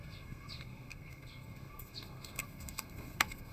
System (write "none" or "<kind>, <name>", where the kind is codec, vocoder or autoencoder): codec, SNAC